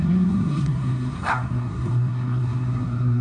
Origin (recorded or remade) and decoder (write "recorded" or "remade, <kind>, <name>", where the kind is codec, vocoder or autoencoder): remade, codec, SNAC